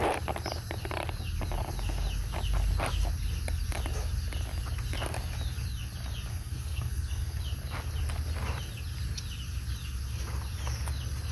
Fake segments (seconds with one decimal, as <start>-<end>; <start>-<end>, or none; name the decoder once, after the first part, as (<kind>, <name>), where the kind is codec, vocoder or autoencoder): 6.3-7.4 (codec, SNAC)